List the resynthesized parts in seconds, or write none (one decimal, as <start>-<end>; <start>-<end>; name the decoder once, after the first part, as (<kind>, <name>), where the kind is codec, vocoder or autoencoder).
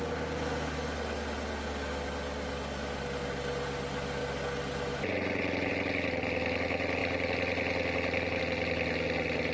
none